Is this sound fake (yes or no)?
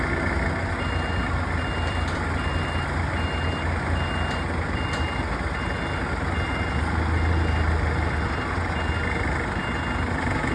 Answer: no